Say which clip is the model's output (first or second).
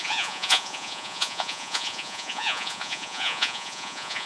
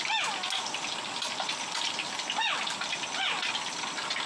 first